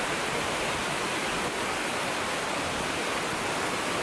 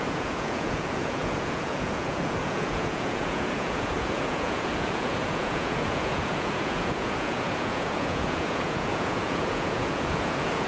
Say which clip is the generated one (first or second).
second